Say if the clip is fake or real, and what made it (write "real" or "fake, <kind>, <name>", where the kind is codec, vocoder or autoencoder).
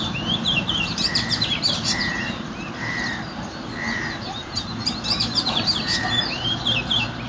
fake, vocoder, BigVGAN v2